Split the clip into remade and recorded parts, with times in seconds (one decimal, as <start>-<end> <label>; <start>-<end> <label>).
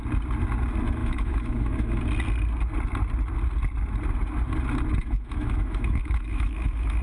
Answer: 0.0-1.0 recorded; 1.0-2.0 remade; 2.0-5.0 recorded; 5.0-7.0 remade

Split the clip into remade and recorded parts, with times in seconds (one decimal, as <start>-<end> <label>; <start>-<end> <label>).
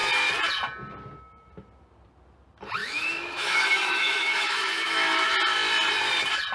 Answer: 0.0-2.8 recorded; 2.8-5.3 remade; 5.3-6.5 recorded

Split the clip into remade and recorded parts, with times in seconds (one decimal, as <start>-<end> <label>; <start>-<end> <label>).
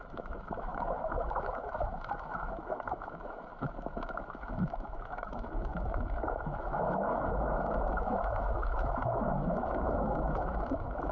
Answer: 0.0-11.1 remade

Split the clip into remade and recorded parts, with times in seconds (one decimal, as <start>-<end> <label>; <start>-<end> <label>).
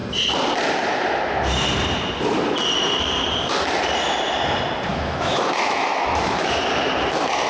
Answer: 0.0-4.9 recorded; 4.9-6.6 remade; 6.6-7.5 recorded